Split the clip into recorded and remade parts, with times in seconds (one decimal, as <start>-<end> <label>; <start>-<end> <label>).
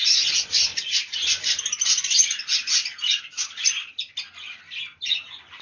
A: 0.0-5.6 recorded